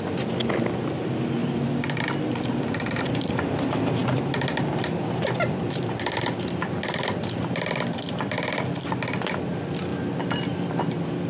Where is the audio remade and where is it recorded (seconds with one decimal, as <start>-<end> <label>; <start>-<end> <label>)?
0.0-1.4 recorded; 1.4-3.0 remade; 3.0-4.0 recorded; 4.0-7.9 remade; 7.9-11.3 recorded